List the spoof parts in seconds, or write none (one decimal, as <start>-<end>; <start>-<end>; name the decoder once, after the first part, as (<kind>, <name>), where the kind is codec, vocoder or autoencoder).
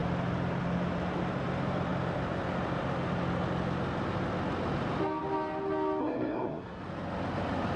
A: 6.0-6.8 (codec, SNAC)